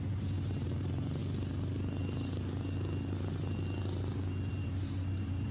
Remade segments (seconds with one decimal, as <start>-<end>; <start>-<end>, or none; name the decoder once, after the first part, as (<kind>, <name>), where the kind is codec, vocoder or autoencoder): 0.0-1.2 (vocoder, BigVGAN v2); 4.5-5.5